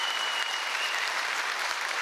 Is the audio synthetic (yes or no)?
yes